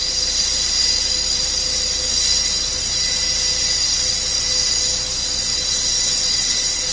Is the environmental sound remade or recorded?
recorded